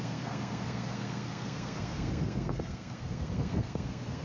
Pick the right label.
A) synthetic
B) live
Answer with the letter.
A